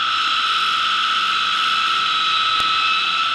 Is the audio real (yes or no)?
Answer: yes